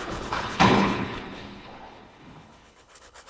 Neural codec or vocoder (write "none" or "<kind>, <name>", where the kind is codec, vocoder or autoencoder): codec, HILCodec